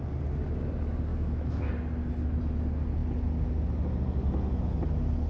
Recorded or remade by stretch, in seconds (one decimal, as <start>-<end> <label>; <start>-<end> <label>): 0.0-1.1 recorded; 1.1-1.7 remade; 1.7-5.3 recorded